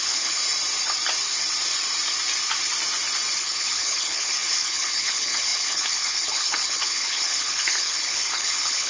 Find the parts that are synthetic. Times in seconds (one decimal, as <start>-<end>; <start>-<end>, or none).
0.0-0.4; 3.4-8.9